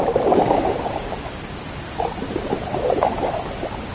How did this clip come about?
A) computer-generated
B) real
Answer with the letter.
A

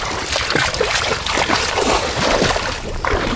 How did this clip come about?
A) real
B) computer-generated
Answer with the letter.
A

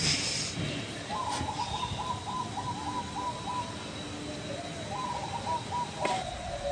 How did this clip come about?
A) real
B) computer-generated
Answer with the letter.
A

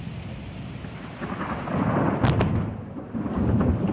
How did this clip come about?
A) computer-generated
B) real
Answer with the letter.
A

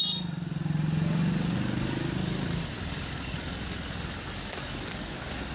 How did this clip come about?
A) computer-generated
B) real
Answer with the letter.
B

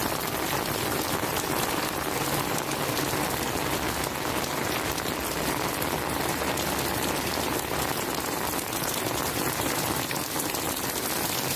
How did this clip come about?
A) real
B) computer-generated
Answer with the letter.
A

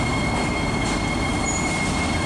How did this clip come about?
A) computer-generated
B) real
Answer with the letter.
A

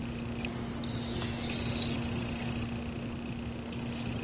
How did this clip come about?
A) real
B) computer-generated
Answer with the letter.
A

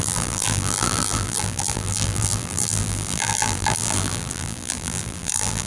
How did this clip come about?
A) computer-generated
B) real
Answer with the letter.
A